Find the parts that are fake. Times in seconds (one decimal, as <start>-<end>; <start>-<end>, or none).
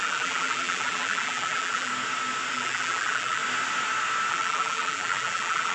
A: 0.0-1.9; 2.5-3.4; 4.3-5.7